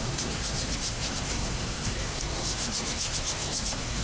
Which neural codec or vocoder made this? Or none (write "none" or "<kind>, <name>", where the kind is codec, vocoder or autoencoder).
codec, SNAC